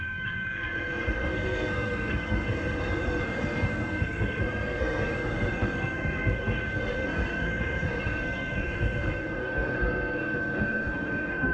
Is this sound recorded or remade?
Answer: remade